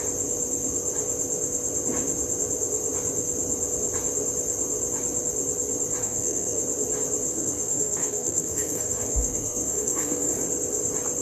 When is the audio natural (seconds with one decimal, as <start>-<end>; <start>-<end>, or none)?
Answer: 0.0-6.0; 6.6-7.3; 10.3-11.2

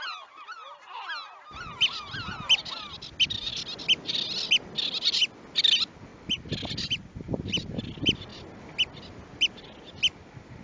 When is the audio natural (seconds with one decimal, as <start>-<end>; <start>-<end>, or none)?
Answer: 0.0-10.6

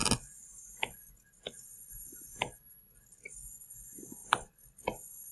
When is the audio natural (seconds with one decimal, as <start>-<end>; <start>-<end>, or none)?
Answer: 0.0-1.7; 2.5-4.2; 4.8-5.3

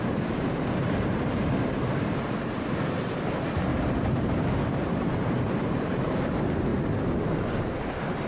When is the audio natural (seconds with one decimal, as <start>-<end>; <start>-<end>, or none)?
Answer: 6.7-7.8